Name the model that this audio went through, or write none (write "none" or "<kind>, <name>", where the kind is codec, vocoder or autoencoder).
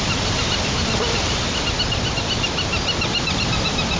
none